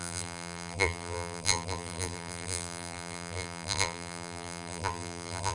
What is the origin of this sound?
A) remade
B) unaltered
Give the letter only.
A